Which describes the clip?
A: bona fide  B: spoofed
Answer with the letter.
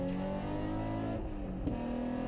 A